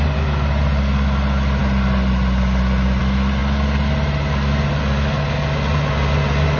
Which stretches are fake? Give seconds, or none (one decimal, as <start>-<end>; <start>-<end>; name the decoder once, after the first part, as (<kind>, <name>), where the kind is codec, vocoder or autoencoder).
none